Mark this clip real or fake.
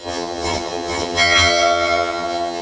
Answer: fake